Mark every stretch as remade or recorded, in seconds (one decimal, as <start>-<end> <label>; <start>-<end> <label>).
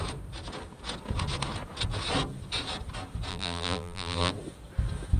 0.0-3.3 recorded; 3.3-4.3 remade; 4.3-5.2 recorded